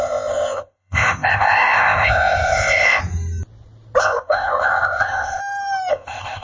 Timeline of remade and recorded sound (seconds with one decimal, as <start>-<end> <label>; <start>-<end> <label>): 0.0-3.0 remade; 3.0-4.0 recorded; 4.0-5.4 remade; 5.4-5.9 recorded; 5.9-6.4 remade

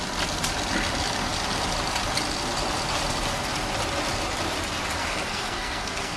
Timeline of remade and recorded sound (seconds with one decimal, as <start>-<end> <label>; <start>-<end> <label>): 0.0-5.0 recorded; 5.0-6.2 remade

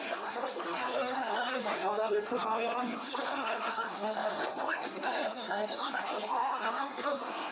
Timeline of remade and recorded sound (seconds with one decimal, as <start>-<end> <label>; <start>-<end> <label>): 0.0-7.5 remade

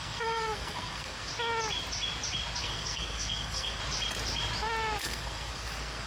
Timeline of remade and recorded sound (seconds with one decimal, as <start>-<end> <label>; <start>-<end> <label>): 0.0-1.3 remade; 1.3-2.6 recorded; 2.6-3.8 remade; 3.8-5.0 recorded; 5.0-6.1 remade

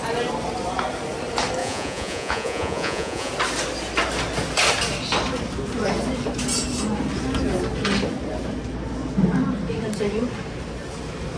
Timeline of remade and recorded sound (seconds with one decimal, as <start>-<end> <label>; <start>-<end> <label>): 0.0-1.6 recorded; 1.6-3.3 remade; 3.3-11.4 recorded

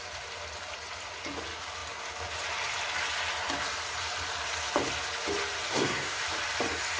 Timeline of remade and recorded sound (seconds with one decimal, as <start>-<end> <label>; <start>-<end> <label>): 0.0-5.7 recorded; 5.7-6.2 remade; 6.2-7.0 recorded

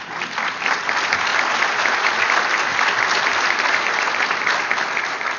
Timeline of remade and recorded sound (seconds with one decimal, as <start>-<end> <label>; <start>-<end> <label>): 0.0-5.4 recorded